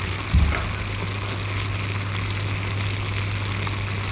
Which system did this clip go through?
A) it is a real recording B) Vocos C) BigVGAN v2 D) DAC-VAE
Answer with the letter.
A